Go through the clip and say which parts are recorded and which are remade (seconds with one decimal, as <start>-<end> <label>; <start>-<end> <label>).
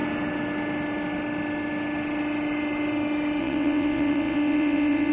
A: 0.0-3.4 recorded; 3.4-5.1 remade